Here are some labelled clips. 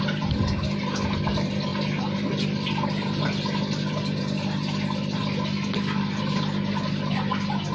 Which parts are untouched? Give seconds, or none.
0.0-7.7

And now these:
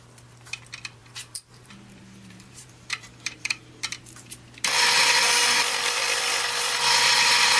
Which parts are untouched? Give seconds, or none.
0.0-1.0; 3.8-7.6

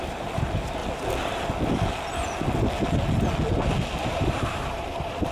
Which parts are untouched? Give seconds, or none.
0.8-4.0

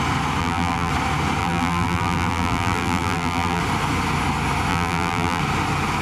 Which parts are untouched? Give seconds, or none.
0.0-0.4; 0.9-1.4; 3.6-4.7; 5.4-6.0

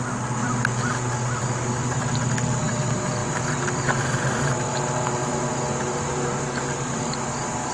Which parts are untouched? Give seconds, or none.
0.0-3.2; 4.6-5.2

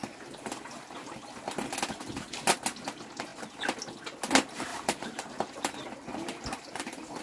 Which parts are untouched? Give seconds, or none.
0.8-4.7

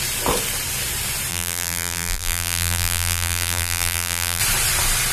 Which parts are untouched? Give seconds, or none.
0.0-1.3; 4.4-5.1